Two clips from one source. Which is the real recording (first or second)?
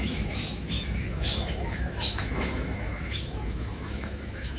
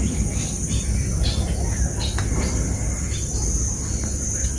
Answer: second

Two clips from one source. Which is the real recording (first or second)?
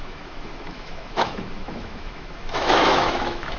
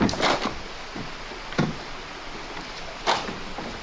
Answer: second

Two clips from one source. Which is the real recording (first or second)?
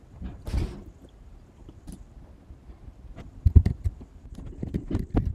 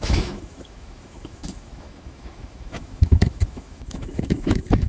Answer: first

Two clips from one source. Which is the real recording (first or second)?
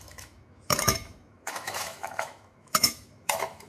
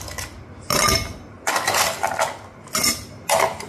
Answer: second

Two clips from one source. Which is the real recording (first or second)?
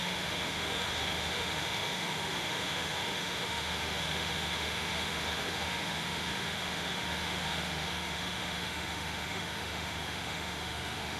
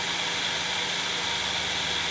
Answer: second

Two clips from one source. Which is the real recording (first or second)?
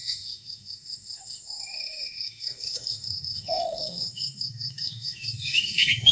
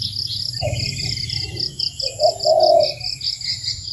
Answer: second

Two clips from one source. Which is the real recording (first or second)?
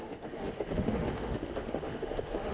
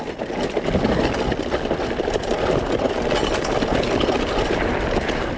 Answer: second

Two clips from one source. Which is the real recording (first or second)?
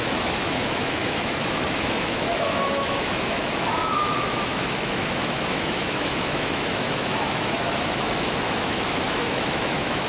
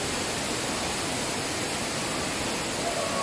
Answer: second